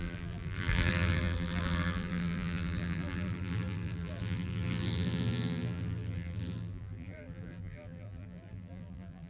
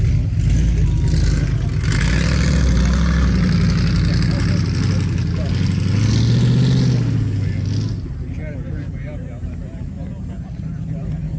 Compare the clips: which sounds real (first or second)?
second